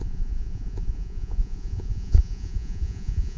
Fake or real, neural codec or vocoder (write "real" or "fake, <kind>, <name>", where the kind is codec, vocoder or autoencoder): fake, vocoder, Vocos